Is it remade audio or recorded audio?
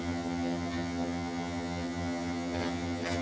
remade